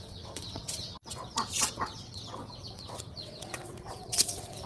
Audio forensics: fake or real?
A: fake